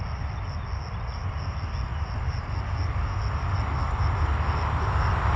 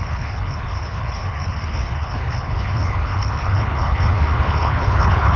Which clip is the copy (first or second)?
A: second